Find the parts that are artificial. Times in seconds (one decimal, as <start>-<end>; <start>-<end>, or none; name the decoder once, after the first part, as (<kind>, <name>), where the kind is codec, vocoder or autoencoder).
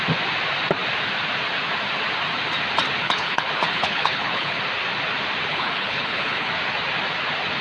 3.0-4.6 (codec, HILCodec); 5.5-6.5